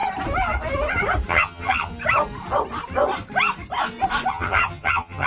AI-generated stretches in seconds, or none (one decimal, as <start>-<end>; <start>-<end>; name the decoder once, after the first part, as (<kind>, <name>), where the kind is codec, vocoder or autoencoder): 1.3-1.9 (vocoder, HiFi-GAN); 4.3-5.3